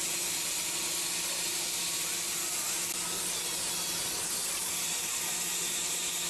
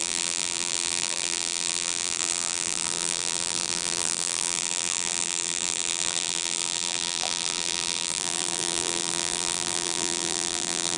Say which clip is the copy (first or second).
second